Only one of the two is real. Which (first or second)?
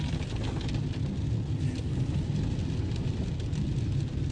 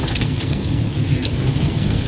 first